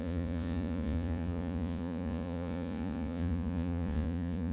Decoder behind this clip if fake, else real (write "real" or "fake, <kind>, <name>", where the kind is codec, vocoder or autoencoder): fake, vocoder, Vocos